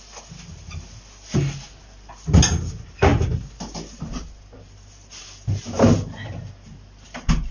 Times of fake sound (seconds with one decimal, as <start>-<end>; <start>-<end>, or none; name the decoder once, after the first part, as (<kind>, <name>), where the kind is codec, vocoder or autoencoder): none